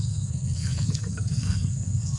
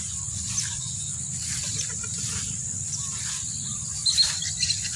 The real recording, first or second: second